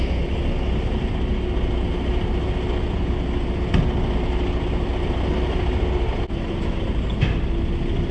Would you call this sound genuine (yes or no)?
yes